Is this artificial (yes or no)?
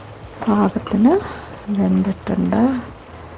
no